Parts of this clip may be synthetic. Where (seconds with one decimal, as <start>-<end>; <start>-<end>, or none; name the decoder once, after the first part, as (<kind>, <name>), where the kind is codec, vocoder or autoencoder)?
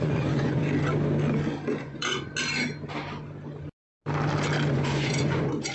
0.0-0.6 (vocoder, Vocos); 1.8-2.3; 4.7-5.7